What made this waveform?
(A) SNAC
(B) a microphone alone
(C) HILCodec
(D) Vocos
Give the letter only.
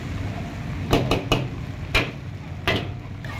B